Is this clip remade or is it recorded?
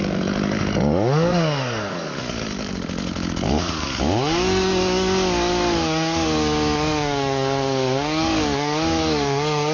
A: remade